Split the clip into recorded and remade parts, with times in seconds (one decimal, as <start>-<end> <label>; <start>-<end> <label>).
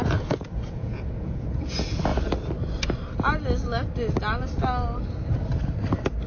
0.0-2.1 remade; 2.1-6.3 recorded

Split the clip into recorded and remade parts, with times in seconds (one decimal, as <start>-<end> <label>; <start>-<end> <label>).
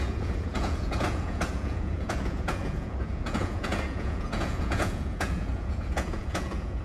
0.0-6.8 remade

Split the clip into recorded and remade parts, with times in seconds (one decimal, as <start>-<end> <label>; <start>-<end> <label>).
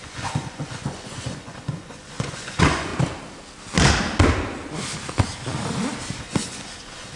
0.0-2.9 remade; 2.9-6.2 recorded; 6.2-7.2 remade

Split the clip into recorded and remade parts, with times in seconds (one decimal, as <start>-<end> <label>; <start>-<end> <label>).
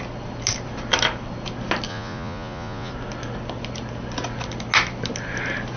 0.0-1.9 recorded; 1.9-2.9 remade; 2.9-5.8 recorded